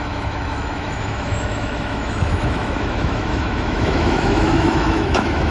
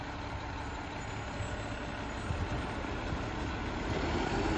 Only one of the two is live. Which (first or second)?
second